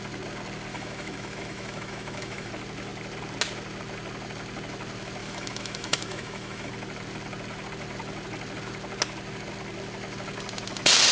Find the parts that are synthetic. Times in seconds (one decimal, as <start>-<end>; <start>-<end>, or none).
0.7-2.5; 5.2-6.7